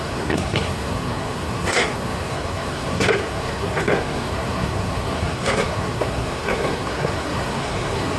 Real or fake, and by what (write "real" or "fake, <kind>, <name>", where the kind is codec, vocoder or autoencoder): fake, codec, SNAC